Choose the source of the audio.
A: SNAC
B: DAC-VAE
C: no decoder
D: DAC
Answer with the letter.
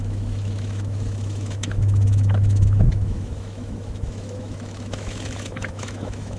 B